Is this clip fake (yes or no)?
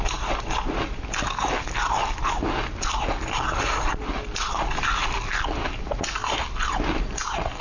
no